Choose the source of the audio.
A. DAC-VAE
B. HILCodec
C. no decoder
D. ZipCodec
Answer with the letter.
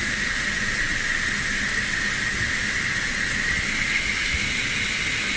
C